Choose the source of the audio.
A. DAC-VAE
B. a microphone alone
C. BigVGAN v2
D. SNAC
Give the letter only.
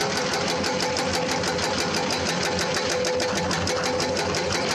B